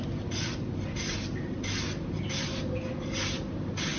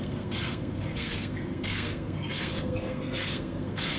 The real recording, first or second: first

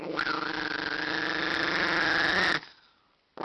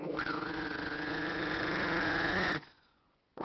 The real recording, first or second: first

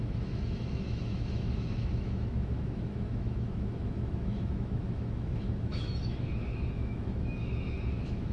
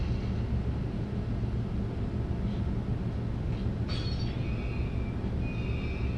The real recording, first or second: second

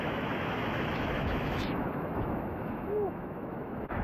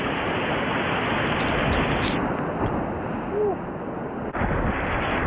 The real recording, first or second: second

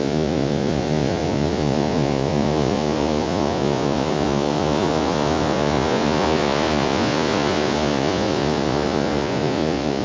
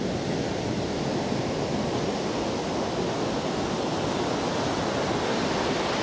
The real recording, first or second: second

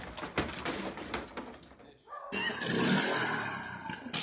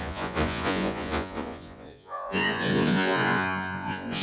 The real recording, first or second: first